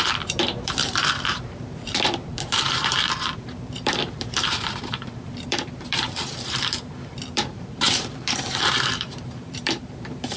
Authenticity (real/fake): fake